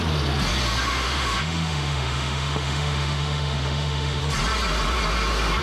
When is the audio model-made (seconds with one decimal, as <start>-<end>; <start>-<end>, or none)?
0.8-4.2